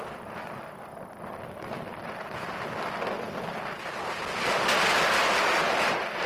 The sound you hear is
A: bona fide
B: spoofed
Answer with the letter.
A